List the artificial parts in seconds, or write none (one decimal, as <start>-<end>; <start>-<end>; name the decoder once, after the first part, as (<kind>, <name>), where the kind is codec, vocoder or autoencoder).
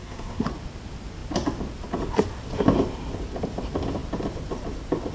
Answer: 0.0-0.5 (codec, SNAC)